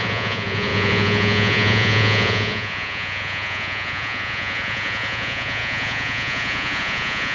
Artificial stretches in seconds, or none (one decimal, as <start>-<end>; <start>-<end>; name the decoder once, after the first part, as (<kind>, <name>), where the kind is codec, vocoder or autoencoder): 0.0-7.3 (vocoder, Vocos)